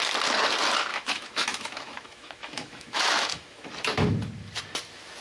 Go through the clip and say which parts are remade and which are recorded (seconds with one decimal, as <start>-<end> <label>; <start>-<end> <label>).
0.0-0.9 recorded; 0.9-3.7 remade; 3.7-5.2 recorded